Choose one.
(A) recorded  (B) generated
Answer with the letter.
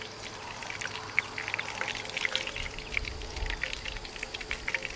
A